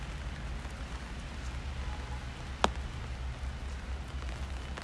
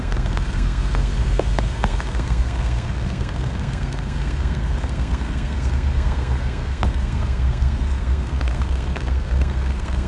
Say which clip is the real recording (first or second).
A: first